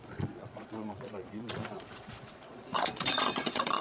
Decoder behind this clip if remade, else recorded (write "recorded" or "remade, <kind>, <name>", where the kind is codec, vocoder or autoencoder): remade, vocoder, Vocos